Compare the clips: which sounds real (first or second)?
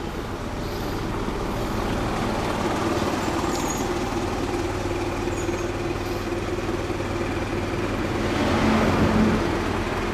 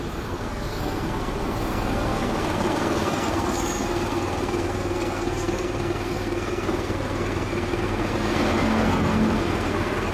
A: first